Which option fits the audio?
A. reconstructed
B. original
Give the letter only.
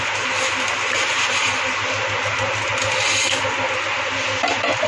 B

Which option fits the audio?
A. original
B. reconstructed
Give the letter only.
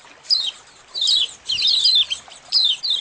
A